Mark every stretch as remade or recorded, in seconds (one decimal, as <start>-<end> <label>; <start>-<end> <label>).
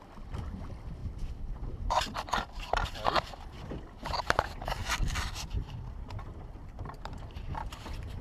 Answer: 0.0-1.0 recorded; 1.0-3.8 remade; 3.8-4.8 recorded; 4.8-8.2 remade